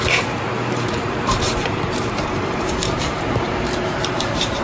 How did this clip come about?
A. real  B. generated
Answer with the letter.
B